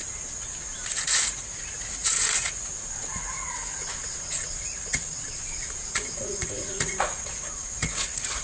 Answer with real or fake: fake